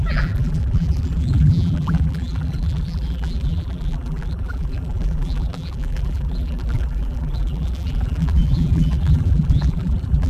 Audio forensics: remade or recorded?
remade